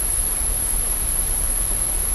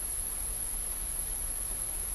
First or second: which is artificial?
first